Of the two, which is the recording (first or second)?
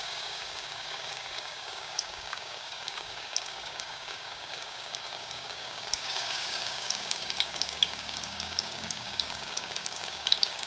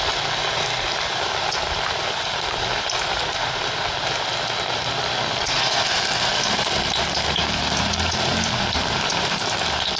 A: second